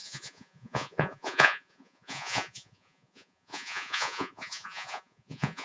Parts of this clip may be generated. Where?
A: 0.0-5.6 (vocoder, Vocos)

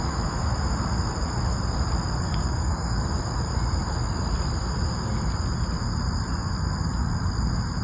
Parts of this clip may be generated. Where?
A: 2.3-3.0 (codec, DAC)

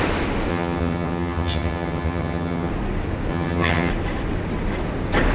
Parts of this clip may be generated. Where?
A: 0.5-2.7 (vocoder, HiFi-GAN); 3.3-3.9

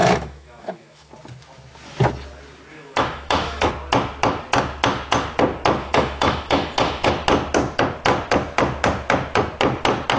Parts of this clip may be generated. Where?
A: 0.0-1.1 (autoencoder, DAC-VAE); 2.7-3.7; 5.8-7.1

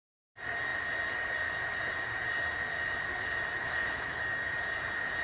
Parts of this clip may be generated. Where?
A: 3.6-4.2 (codec, HILCodec)

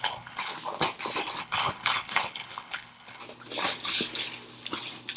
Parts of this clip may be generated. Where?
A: 0.0-0.5 (codec, HILCodec); 1.4-3.2